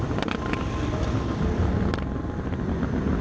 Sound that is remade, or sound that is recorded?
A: recorded